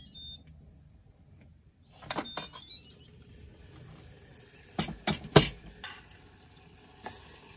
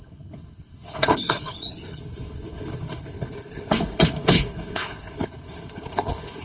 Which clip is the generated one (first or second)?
second